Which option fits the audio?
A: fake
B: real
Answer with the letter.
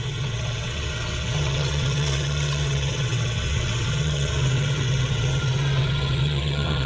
A